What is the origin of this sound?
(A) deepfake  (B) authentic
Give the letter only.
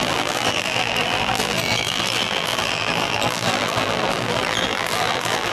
A